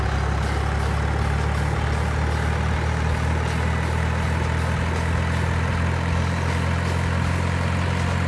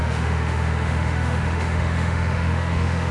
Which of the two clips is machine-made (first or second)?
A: second